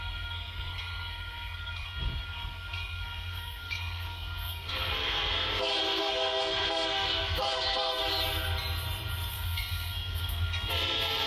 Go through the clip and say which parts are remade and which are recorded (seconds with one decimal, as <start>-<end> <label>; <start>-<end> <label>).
0.0-8.0 remade; 8.0-9.3 recorded; 9.3-11.3 remade